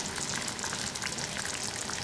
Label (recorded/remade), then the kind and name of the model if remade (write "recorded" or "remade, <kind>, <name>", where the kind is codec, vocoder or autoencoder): recorded